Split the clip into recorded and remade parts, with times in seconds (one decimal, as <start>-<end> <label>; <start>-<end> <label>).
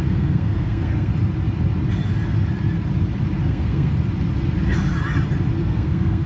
0.0-1.1 remade; 1.1-3.4 recorded; 3.4-3.9 remade; 3.9-5.6 recorded; 5.6-6.3 remade